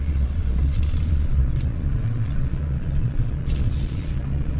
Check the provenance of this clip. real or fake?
fake